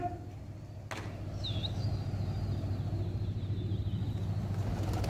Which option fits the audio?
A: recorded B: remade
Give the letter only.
A